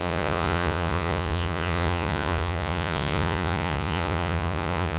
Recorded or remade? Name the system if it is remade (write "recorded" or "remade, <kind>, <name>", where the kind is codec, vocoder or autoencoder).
remade, vocoder, Vocos